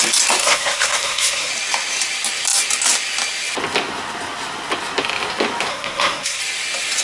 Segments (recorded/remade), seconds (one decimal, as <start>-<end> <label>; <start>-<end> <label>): 0.0-0.4 recorded; 0.4-1.5 remade; 1.5-5.7 recorded; 5.7-6.4 remade; 6.4-7.0 recorded